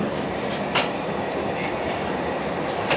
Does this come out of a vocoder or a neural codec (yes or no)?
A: no